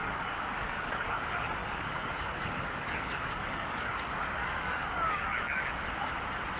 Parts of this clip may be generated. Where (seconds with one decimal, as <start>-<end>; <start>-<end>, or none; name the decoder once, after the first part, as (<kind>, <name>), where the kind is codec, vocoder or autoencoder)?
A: 0.0-1.2 (codec, DAC); 1.6-5.6